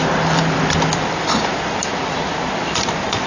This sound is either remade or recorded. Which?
remade